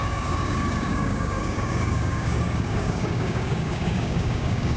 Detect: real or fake fake